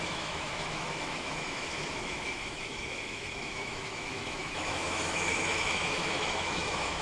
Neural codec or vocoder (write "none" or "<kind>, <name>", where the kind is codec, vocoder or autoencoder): autoencoder, DAC-VAE